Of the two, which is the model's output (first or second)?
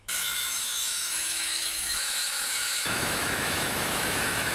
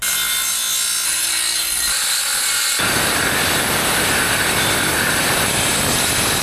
first